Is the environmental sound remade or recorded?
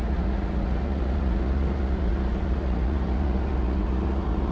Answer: remade